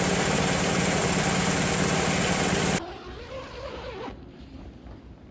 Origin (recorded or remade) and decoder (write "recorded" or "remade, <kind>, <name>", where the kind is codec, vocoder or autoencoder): recorded